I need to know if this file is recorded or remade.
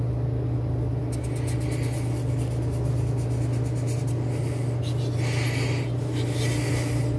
recorded